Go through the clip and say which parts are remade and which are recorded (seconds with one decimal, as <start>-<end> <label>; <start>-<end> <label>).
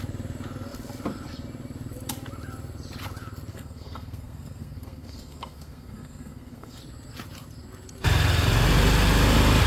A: 0.0-3.5 recorded; 3.5-6.8 remade; 6.8-9.7 recorded